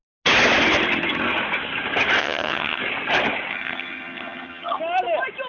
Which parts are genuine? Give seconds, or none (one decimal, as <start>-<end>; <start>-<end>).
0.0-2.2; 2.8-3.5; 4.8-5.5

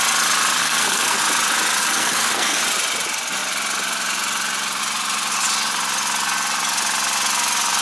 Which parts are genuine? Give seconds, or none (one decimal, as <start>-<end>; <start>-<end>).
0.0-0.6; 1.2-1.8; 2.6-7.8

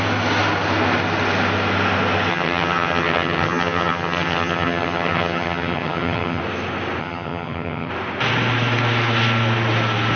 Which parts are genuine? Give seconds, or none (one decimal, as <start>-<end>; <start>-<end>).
0.0-2.3; 6.4-7.0; 7.9-10.2

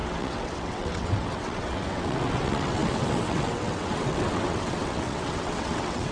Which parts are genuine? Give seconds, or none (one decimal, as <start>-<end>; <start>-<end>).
none